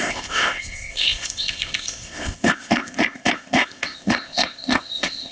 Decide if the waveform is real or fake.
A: fake